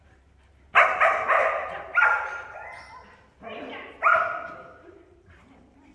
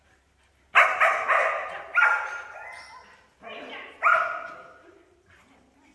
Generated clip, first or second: first